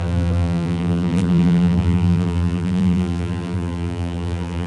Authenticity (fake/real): fake